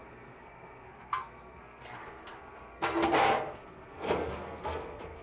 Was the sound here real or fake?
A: fake